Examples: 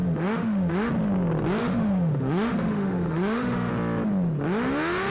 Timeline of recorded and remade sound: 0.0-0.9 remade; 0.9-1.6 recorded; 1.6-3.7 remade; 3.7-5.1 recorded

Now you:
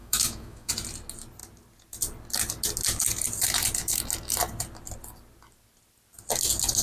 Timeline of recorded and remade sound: 0.0-0.7 remade; 0.7-6.8 recorded

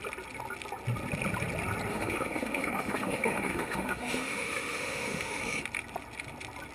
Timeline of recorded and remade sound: 0.0-1.9 recorded; 1.9-5.4 remade; 5.4-6.7 recorded

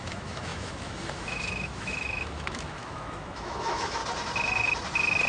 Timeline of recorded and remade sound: 0.0-4.0 remade; 4.0-5.3 recorded

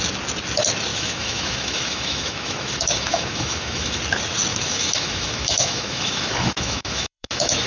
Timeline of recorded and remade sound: 0.0-0.9 recorded; 0.9-4.0 remade; 4.0-4.5 recorded; 4.5-7.7 remade